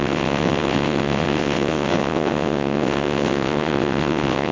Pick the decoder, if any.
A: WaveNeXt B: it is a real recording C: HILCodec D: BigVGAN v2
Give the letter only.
A